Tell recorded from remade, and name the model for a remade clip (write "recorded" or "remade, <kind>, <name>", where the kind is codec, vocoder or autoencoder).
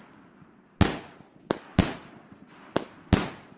recorded